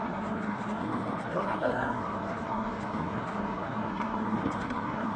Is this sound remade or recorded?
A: remade